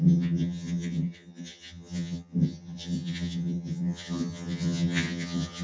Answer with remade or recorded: remade